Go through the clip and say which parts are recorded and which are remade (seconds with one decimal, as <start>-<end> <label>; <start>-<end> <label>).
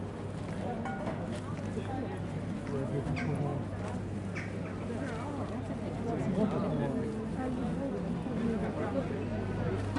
0.0-10.0 recorded